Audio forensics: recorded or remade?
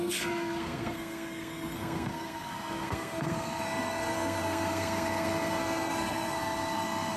remade